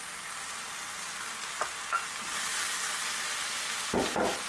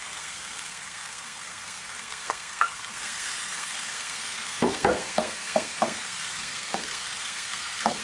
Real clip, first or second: first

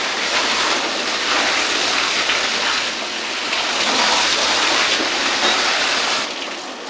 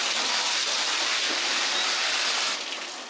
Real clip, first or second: second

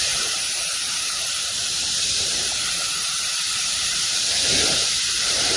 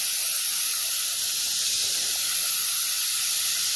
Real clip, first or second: second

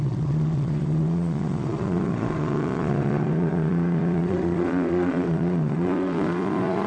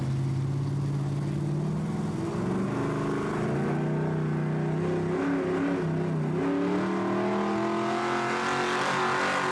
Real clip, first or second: second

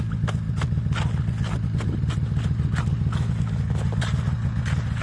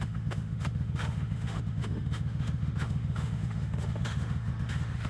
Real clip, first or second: first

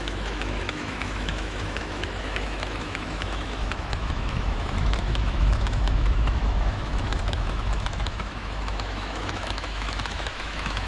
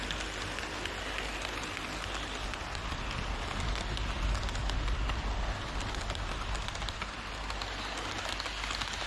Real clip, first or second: second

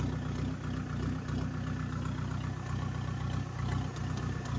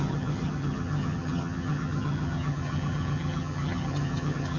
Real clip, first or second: first